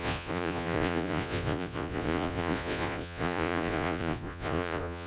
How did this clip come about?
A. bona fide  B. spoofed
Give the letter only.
B